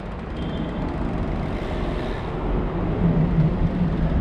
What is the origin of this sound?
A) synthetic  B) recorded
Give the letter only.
B